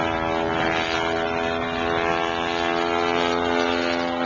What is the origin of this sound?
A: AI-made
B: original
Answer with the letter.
B